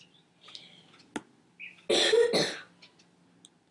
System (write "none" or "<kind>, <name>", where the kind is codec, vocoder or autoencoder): none